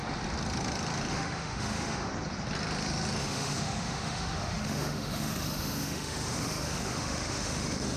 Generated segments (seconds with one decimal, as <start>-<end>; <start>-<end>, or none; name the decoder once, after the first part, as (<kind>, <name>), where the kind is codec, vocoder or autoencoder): 1.1-2.1 (autoencoder, DAC-VAE); 3.2-8.0